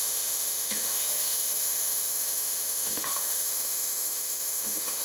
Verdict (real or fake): fake